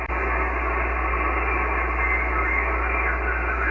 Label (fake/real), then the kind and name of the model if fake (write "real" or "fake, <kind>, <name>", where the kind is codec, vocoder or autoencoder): real